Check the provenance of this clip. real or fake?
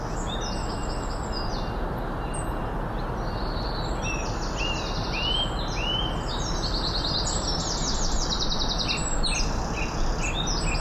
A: real